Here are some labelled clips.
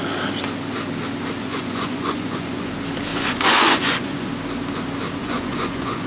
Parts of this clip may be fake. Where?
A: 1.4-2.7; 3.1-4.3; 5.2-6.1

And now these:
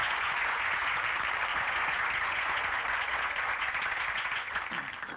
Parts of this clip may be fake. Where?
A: 0.0-1.0; 1.5-4.6

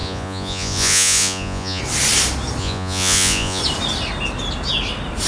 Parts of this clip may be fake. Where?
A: 0.0-1.8; 2.6-3.6